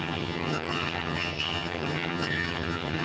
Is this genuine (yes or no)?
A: no